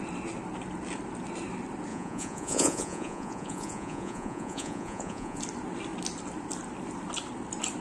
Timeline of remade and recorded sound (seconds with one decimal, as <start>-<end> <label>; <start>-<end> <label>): 0.0-1.9 recorded; 1.9-5.4 remade; 5.4-7.8 recorded